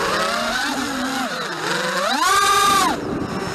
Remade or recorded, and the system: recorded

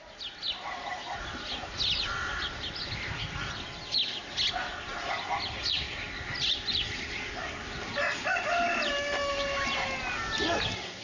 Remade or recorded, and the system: recorded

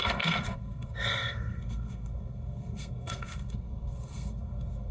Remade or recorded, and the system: remade, codec, SNAC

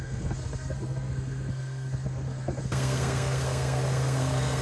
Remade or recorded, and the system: remade, codec, SNAC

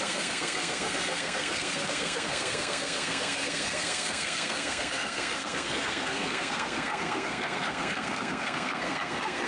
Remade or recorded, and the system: remade, codec, SNAC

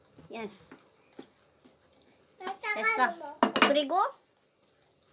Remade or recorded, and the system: recorded